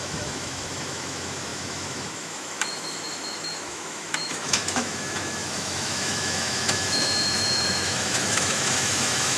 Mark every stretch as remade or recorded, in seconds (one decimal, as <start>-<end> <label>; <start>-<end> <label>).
0.0-9.4 remade